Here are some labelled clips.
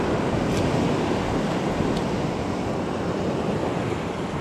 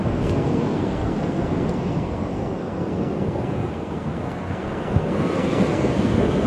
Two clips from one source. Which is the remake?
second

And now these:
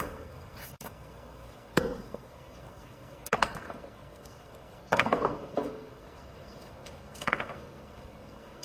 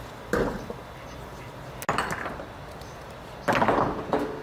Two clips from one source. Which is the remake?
first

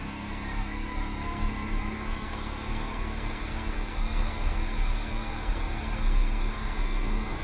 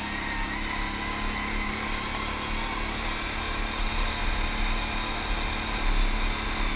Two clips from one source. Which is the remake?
first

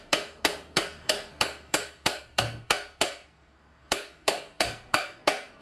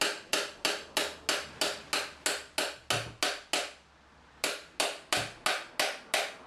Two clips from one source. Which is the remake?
first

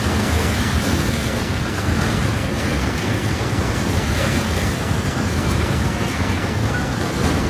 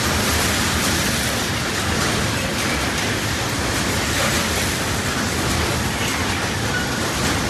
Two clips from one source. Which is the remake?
first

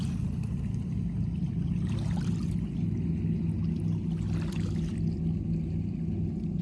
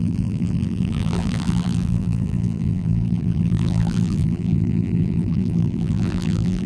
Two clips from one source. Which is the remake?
second